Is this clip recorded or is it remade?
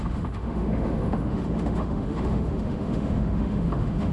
remade